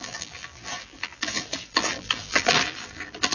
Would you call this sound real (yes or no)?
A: no